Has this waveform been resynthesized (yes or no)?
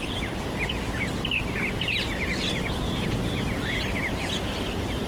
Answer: no